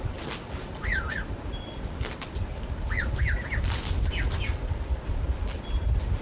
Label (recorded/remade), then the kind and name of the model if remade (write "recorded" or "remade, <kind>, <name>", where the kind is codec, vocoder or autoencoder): recorded